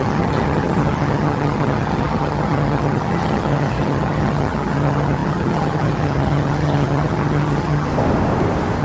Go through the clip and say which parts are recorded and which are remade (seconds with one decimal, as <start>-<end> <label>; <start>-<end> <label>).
0.0-7.9 remade; 7.9-8.8 recorded

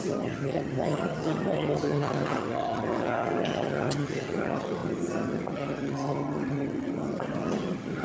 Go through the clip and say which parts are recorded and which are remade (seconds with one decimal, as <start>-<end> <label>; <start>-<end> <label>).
0.0-8.0 remade

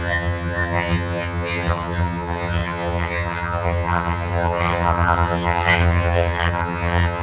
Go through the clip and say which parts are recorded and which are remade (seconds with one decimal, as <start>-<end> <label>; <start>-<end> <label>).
0.0-7.2 remade

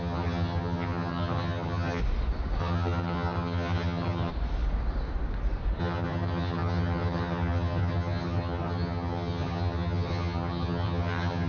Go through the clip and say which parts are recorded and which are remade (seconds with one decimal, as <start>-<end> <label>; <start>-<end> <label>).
0.0-2.0 remade; 2.0-2.6 recorded; 2.6-4.3 remade; 4.3-5.8 recorded; 5.8-11.5 remade

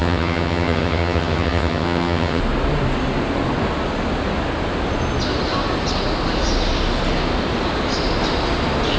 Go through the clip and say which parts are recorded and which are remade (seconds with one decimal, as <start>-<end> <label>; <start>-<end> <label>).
0.0-2.4 remade; 2.4-9.0 recorded

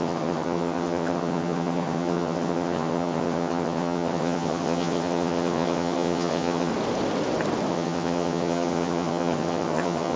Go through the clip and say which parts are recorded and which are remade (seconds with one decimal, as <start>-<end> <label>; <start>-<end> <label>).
0.0-6.7 remade; 6.7-7.7 recorded; 7.7-10.2 remade

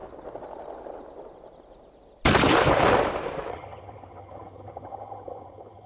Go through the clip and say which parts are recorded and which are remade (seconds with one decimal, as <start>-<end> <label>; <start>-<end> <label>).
0.0-3.5 recorded; 3.5-5.9 remade

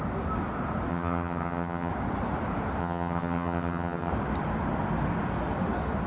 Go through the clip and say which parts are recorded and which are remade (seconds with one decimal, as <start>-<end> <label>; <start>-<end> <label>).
0.0-0.9 recorded; 0.9-1.9 remade; 1.9-2.8 recorded; 2.8-4.1 remade; 4.1-6.1 recorded